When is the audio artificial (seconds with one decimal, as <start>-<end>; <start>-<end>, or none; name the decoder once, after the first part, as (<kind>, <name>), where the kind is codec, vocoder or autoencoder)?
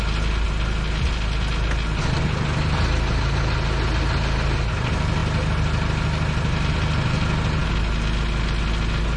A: none